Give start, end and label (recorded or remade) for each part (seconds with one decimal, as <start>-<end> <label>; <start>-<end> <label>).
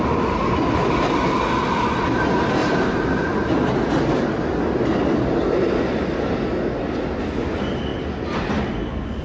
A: 0.0-9.2 recorded